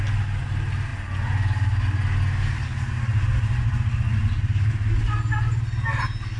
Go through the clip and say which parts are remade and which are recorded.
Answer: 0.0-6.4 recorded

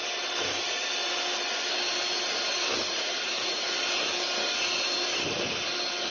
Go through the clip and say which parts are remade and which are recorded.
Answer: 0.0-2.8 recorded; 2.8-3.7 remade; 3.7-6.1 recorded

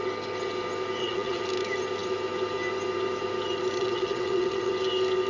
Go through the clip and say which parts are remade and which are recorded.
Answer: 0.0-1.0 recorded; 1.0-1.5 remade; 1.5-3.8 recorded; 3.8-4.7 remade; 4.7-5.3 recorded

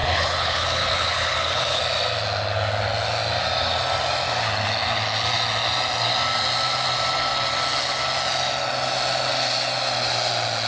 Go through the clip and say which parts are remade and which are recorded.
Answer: 0.0-1.8 remade; 1.8-10.7 recorded

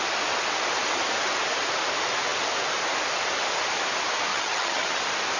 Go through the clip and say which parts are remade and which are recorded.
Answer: 0.0-4.3 recorded; 4.3-5.0 remade; 5.0-5.4 recorded

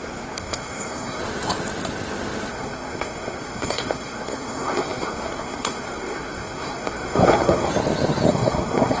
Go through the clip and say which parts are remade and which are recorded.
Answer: 0.0-1.2 remade; 1.2-2.5 recorded; 2.5-7.7 remade; 7.7-8.3 recorded; 8.3-9.0 remade